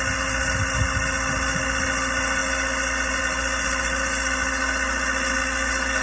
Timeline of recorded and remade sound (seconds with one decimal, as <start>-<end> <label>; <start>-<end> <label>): 0.0-6.0 recorded